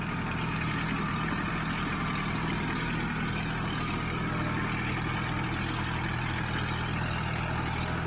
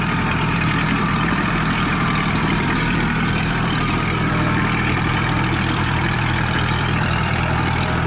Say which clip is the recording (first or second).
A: first